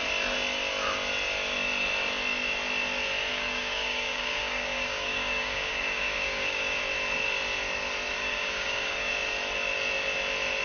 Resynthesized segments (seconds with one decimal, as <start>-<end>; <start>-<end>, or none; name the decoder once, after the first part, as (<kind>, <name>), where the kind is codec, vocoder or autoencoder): 3.3-6.8 (codec, DAC); 8.2-9.1